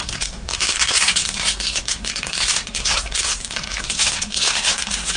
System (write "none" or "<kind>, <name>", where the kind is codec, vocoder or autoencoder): codec, SNAC